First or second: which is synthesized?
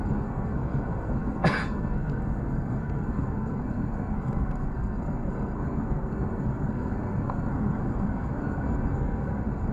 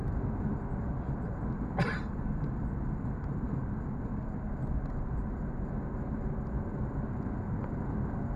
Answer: first